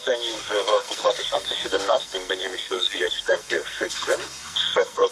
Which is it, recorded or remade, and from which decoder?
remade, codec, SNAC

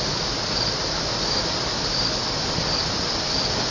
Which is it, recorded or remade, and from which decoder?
recorded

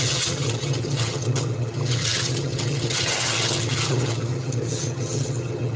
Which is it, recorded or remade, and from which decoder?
remade, vocoder, HiFi-GAN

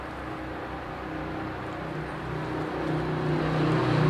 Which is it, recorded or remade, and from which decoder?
recorded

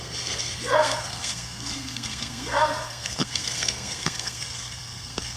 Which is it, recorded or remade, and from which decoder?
remade, codec, SNAC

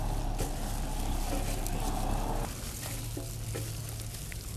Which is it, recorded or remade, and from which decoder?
recorded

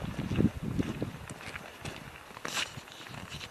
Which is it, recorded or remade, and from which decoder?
recorded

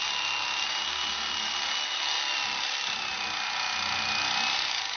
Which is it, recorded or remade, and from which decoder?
recorded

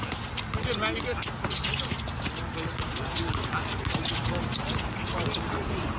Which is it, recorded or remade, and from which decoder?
recorded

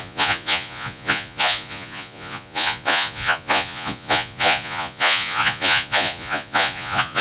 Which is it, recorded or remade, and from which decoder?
remade, vocoder, Vocos